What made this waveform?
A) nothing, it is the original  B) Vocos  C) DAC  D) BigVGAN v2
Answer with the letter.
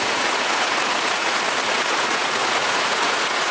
B